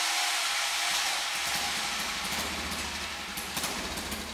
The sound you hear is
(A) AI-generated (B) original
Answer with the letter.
B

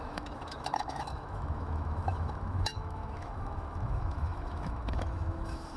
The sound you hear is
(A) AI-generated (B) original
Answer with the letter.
A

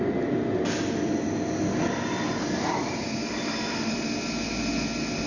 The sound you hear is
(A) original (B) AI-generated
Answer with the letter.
A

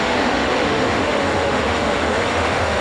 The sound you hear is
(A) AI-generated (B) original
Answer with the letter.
A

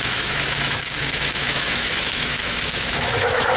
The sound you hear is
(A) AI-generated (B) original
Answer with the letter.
A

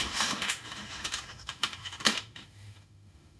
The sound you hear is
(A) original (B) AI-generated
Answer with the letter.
B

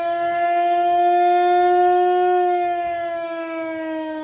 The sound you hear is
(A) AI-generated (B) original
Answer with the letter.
A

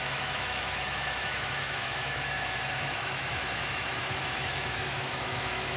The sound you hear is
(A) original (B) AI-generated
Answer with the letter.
B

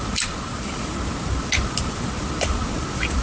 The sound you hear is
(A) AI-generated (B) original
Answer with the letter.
B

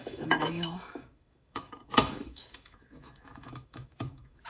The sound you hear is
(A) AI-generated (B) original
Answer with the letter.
A